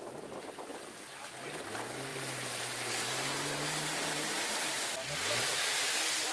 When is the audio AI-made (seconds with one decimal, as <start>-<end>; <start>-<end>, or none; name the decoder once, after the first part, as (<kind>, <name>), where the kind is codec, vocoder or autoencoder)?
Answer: 2.1-4.7 (vocoder, BigVGAN v2)